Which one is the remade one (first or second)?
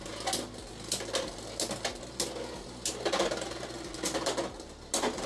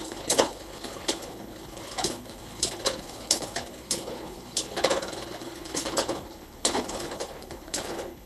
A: second